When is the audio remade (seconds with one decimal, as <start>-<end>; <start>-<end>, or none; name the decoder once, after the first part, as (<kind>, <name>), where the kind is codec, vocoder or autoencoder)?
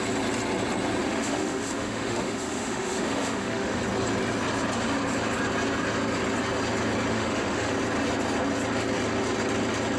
1.0-3.8 (autoencoder, DAC-VAE); 7.1-7.7